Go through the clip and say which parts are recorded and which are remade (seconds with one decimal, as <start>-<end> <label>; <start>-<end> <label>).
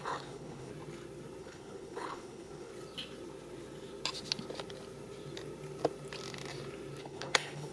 0.0-0.7 remade; 0.7-1.4 recorded; 1.4-2.7 remade; 2.7-7.0 recorded; 7.0-7.7 remade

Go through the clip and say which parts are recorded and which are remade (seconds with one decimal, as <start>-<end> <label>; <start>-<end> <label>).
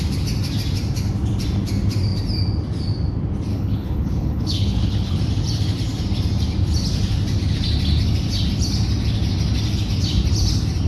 0.0-3.5 recorded; 3.5-5.2 remade; 5.2-10.9 recorded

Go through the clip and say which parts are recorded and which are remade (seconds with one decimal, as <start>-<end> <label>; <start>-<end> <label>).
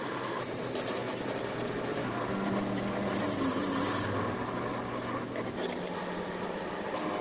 0.0-7.2 recorded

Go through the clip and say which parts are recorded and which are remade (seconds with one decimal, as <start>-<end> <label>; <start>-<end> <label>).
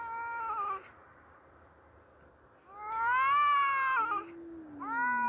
0.0-5.3 recorded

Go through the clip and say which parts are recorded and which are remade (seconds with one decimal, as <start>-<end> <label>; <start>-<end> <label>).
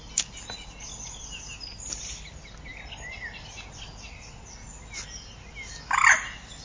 0.0-6.6 recorded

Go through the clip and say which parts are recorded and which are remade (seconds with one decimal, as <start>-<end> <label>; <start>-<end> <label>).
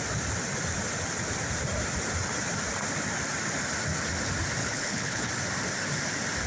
0.0-4.6 recorded; 4.6-5.3 remade; 5.3-6.5 recorded